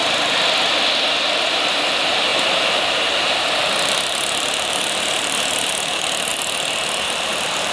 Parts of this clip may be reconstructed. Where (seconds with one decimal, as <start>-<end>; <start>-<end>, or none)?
1.3-7.7

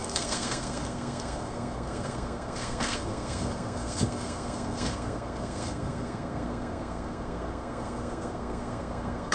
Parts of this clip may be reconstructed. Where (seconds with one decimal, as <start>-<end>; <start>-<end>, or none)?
0.0-9.3

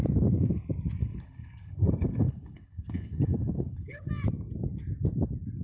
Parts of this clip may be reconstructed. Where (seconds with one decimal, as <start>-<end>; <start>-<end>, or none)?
1.0-4.1

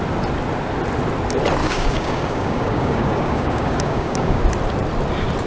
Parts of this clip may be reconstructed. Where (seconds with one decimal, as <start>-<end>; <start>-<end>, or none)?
1.6-4.4

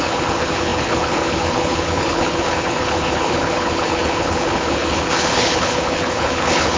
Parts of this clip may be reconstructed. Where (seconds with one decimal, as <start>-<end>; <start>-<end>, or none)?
0.0-6.8

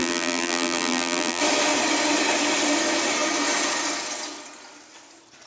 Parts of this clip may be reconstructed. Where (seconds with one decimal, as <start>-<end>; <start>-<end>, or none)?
0.0-1.4